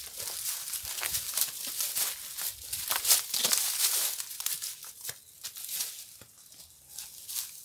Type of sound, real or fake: real